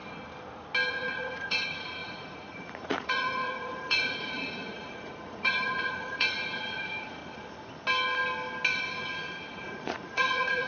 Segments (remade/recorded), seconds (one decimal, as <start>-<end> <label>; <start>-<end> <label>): 0.0-0.9 recorded; 0.9-7.2 remade; 7.2-9.5 recorded; 9.5-10.7 remade